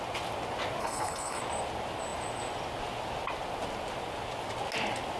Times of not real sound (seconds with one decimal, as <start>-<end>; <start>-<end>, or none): 0.8-1.4